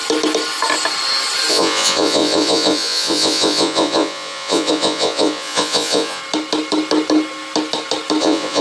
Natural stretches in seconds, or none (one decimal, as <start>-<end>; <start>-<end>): 0.0-1.5; 6.2-8.2